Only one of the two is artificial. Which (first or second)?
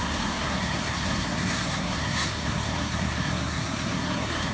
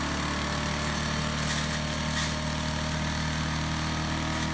first